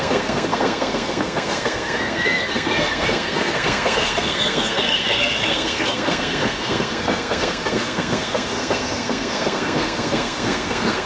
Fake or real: fake